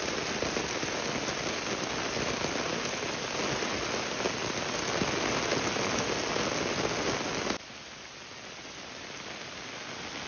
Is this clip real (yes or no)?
yes